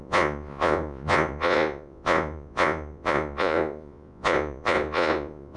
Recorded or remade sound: remade